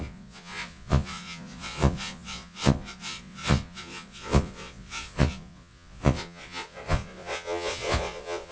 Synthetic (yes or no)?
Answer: yes